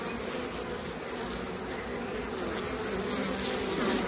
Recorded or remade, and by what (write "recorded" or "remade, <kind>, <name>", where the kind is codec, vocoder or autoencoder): recorded